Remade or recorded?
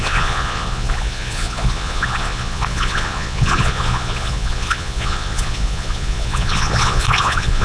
remade